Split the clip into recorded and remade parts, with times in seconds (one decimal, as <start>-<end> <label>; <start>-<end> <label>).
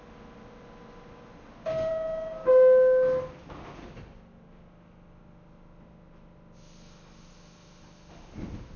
0.0-8.8 recorded